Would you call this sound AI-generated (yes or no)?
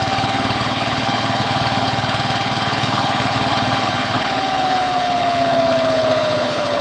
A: yes